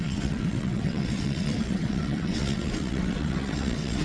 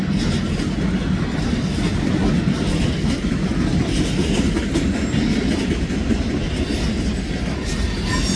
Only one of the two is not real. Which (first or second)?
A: first